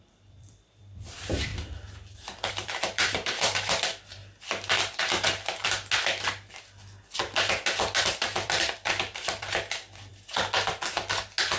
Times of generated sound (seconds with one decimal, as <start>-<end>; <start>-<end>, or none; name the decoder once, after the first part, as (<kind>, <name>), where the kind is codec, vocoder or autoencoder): 0.0-1.5 (vocoder, BigVGAN v2); 2.5-4.2; 8.0-10.1